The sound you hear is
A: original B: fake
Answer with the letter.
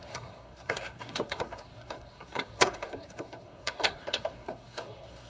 B